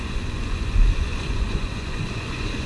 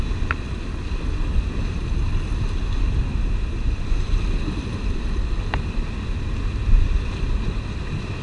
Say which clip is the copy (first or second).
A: first